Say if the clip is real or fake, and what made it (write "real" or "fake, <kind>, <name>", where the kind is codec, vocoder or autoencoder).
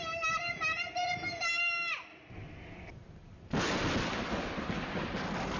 real